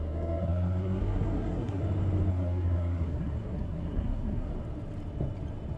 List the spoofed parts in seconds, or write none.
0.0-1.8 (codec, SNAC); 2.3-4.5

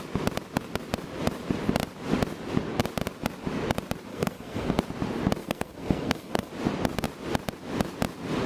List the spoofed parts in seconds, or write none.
4.1-4.8 (codec, SNAC); 5.4-6.5

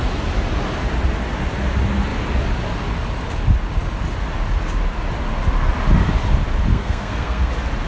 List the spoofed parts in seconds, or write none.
6.7-7.5 (codec, SNAC)

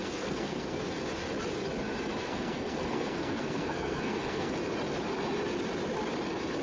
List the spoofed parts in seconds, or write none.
0.0-0.8 (codec, SNAC); 2.2-4.5

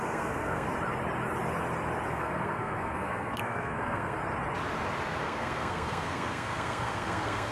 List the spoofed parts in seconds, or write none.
0.0-0.7 (codec, SNAC); 2.1-4.2; 5.2-7.5